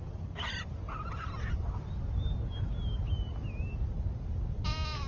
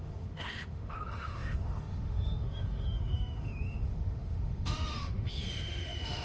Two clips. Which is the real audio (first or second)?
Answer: first